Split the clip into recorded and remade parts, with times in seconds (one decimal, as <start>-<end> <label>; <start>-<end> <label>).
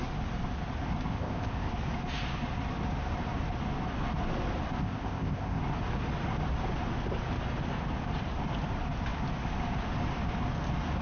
0.0-1.1 recorded; 1.1-1.7 remade; 1.7-4.8 recorded; 4.8-5.6 remade; 5.6-11.0 recorded